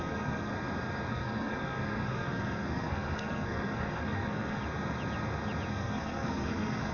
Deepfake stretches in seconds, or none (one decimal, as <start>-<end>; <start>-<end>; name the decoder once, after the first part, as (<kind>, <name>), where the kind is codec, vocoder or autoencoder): 0.0-0.5 (codec, SNAC); 1.1-4.6; 5.7-6.9

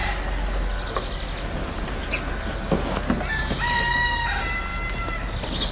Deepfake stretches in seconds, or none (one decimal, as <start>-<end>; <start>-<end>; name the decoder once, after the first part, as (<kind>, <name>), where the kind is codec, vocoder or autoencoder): none

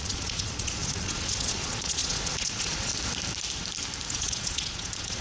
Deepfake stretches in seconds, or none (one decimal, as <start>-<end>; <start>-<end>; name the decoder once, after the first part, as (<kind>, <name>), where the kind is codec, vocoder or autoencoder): 0.0-2.9 (vocoder, Vocos); 4.1-5.2